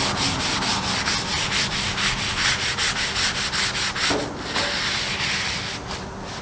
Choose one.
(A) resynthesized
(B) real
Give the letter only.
B